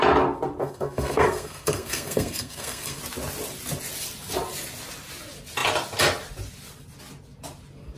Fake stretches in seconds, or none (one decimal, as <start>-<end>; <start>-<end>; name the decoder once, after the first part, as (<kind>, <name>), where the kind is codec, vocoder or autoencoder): 0.6-3.0 (codec, SNAC)